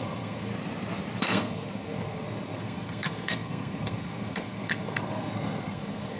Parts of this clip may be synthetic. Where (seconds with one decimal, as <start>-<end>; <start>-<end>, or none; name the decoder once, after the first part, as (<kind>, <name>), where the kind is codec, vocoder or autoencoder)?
0.0-0.5 (codec, SNAC); 1.2-6.2